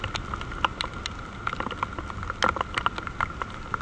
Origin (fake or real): real